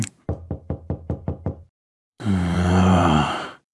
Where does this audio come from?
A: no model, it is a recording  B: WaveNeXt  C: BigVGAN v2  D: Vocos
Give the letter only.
C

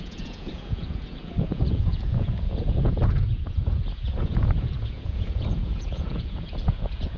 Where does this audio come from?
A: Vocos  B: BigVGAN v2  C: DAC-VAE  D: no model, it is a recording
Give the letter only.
A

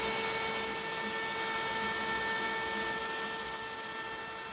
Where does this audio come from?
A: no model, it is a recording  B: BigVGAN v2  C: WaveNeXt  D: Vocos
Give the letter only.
A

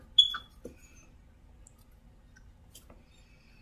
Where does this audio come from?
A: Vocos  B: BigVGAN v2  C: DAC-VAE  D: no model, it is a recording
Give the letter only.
D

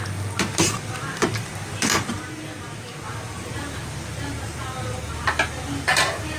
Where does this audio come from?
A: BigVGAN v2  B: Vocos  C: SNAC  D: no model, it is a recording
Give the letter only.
D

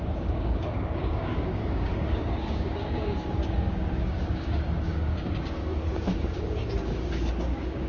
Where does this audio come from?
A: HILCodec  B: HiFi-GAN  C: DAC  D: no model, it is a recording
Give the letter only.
C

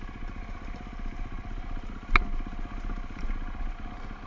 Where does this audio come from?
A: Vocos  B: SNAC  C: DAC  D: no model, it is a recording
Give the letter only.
D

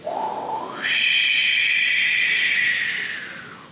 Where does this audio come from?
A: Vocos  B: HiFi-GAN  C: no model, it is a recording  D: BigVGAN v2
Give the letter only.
C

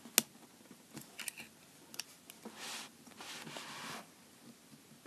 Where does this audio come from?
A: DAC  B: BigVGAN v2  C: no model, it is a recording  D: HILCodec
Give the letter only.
C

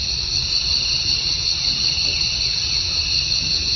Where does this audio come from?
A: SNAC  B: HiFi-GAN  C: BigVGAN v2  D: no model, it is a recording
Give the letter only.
D